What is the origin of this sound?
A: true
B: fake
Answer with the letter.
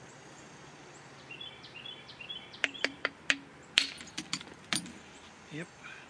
B